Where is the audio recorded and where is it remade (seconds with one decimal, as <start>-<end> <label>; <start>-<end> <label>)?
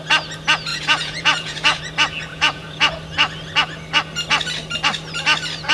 0.0-0.7 recorded; 0.7-1.8 remade; 1.8-2.3 recorded; 2.3-2.9 remade; 2.9-5.7 recorded